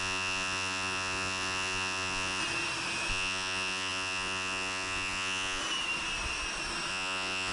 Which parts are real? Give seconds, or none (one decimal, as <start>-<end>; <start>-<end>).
2.4-3.1; 5.6-6.9